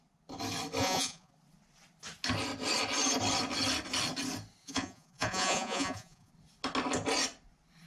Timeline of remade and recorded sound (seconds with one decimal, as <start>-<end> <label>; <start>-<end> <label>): 0.0-0.8 recorded; 0.8-1.3 remade; 1.3-4.6 recorded; 4.6-6.3 remade; 6.3-7.9 recorded

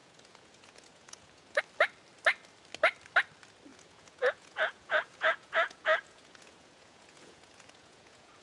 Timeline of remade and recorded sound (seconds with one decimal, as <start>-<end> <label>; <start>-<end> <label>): 0.0-1.6 remade; 1.6-3.7 recorded; 3.7-8.4 remade

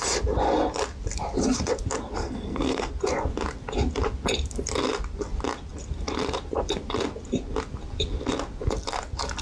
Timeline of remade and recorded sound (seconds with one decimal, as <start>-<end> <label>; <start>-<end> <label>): 0.0-2.2 recorded; 2.2-2.9 remade; 2.9-9.4 recorded

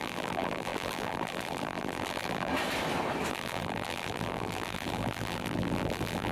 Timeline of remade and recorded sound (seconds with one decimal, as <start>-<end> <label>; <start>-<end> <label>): 0.0-2.5 remade; 2.5-3.3 recorded; 3.3-6.3 remade

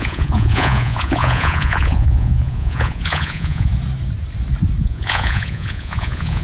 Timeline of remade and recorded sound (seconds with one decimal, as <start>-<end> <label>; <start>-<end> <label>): 0.0-3.7 remade; 3.7-4.8 recorded; 4.8-6.4 remade